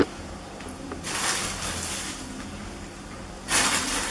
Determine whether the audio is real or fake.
real